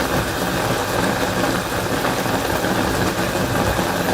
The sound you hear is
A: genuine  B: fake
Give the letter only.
A